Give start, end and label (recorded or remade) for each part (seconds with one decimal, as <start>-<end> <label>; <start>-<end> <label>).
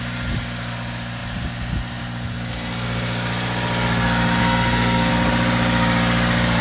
0.0-4.4 recorded; 4.4-5.1 remade; 5.1-6.6 recorded